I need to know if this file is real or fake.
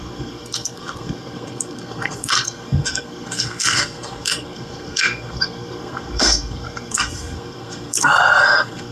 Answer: fake